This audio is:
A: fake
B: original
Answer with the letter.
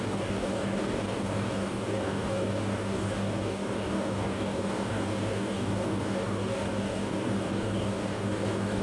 A